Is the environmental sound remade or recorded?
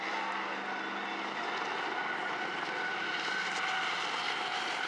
recorded